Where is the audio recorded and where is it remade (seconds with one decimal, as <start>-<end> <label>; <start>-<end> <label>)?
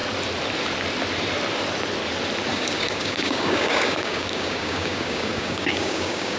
0.0-2.5 recorded; 2.5-6.4 remade